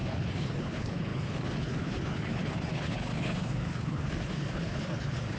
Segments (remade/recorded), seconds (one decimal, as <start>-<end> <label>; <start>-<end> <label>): 0.0-5.4 remade